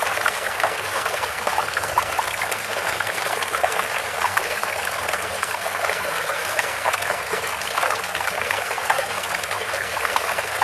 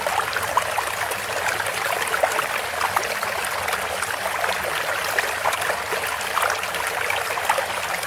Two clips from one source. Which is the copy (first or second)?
first